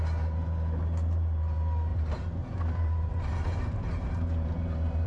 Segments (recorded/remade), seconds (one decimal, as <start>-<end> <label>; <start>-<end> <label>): 0.0-1.9 recorded; 1.9-5.1 remade